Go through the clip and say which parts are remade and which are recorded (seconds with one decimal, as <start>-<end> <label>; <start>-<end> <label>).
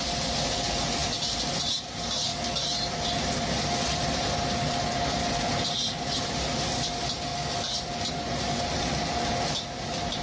0.0-10.2 recorded